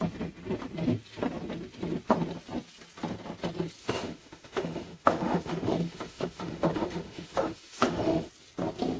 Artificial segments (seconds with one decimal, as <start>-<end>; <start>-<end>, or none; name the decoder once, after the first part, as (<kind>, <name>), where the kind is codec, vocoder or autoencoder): 3.8-8.3 (autoencoder, DAC-VAE)